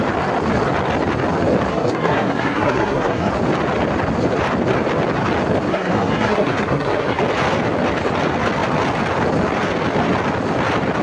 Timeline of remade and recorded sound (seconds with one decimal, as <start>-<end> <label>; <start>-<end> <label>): 0.0-1.7 recorded; 1.7-3.3 remade; 3.3-5.7 recorded; 5.7-7.2 remade; 7.2-11.0 recorded